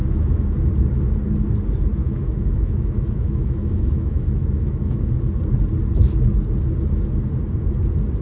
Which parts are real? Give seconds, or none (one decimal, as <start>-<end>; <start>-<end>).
0.7-2.0; 5.1-8.2